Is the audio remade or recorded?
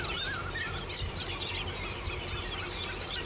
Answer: recorded